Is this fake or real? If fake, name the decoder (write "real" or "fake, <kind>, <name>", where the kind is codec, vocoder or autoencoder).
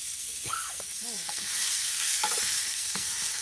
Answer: fake, codec, SNAC